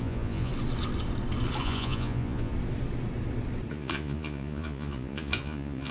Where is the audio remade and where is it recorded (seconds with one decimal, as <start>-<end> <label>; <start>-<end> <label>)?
0.0-0.5 remade; 0.5-1.6 recorded; 1.6-2.5 remade; 2.5-3.7 recorded; 3.7-5.9 remade